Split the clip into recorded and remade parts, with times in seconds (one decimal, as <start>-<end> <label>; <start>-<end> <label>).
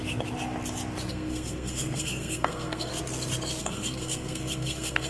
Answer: 0.0-1.1 recorded; 1.1-2.9 remade; 2.9-3.6 recorded; 3.6-5.1 remade